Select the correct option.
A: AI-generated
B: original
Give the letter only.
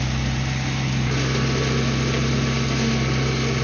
B